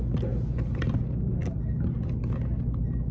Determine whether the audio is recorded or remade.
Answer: recorded